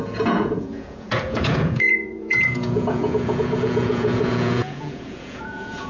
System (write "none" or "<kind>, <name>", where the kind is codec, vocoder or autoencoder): vocoder, Vocos